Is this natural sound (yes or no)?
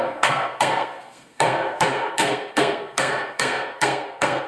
no